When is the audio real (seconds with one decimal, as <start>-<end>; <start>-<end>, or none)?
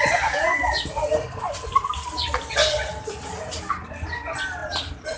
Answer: 0.0-5.2